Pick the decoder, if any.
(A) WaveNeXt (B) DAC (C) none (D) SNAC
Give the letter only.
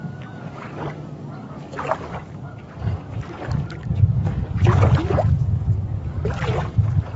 B